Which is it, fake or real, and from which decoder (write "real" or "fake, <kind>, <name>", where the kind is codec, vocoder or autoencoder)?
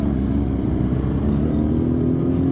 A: real